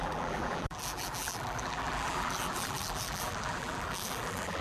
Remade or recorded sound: remade